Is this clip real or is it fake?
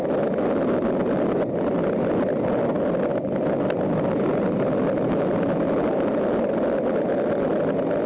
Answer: real